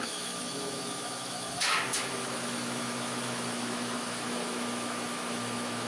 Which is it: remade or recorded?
remade